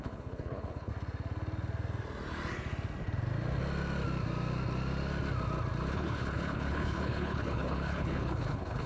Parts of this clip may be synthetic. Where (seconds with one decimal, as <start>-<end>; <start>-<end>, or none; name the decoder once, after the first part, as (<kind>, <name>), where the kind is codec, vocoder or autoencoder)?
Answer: 0.0-0.9 (codec, HILCodec); 5.9-8.9